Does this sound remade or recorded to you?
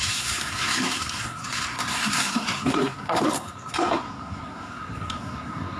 remade